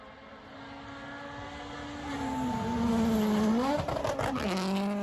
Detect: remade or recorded recorded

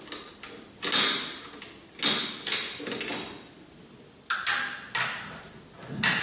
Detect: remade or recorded recorded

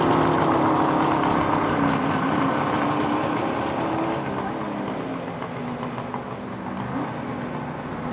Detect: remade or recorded recorded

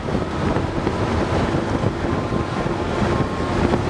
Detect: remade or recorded recorded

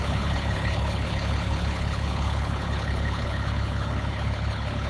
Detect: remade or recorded remade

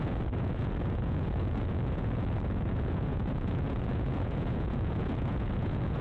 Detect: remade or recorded remade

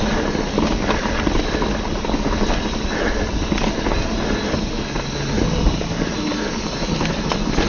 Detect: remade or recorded recorded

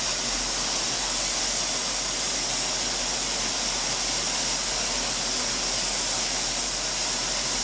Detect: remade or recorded recorded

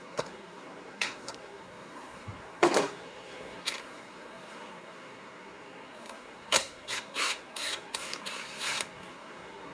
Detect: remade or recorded remade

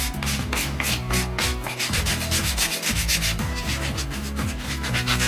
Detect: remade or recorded remade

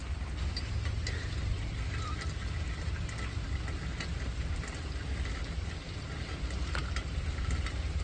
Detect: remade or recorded recorded